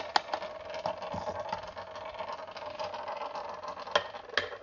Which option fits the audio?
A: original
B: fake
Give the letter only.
A